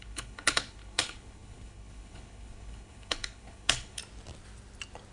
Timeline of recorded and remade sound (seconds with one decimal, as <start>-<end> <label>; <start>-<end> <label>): 0.0-4.0 remade; 4.0-5.1 recorded